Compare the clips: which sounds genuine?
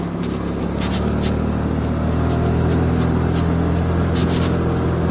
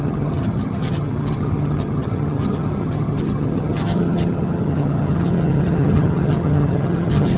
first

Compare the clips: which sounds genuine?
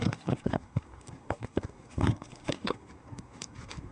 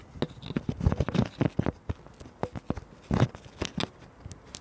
second